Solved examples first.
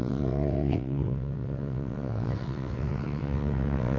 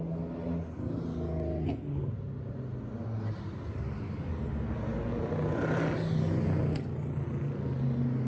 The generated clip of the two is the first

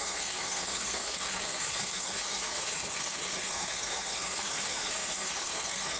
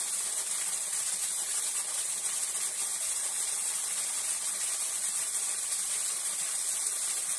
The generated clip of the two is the first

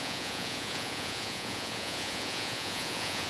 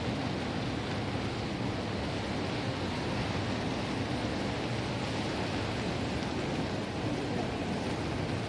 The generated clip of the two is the first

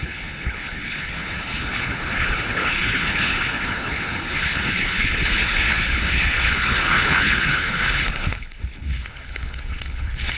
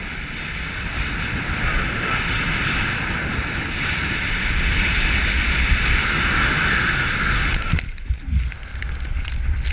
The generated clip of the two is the first